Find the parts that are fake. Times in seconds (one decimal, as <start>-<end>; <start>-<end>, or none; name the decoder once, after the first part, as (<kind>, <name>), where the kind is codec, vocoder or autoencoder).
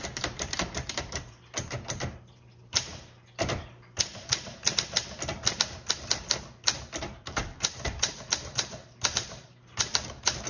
0.0-2.9 (vocoder, BigVGAN v2); 7.2-10.5